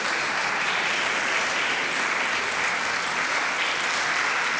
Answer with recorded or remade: recorded